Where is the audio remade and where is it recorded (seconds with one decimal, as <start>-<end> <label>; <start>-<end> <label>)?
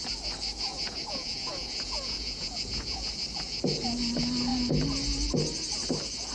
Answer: 0.0-0.7 recorded; 0.7-3.1 remade; 3.1-6.3 recorded